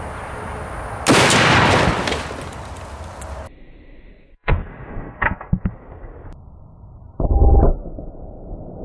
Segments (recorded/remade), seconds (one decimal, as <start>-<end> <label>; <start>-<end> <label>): 0.0-4.1 recorded; 4.1-5.6 remade; 5.6-8.8 recorded